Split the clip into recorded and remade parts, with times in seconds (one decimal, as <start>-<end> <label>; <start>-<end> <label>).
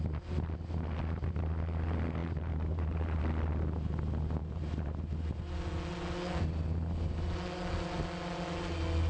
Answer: 0.0-2.2 recorded; 2.2-3.2 remade; 3.2-4.4 recorded; 4.4-5.1 remade; 5.1-9.1 recorded